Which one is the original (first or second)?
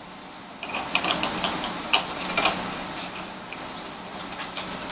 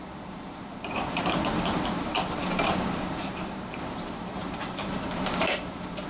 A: first